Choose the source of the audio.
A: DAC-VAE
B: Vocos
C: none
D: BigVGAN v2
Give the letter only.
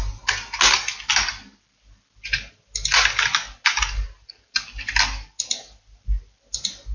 C